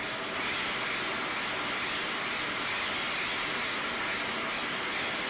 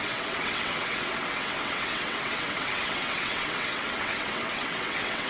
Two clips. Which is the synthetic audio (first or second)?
second